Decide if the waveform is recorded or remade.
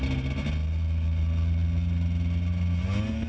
recorded